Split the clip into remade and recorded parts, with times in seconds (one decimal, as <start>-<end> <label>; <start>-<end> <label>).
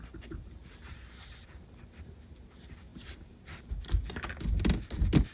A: 0.0-0.6 recorded; 0.6-1.3 remade; 1.3-2.9 recorded; 2.9-3.7 remade; 3.7-5.3 recorded